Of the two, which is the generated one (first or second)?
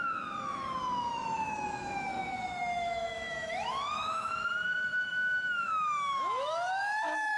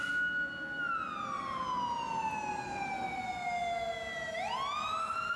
first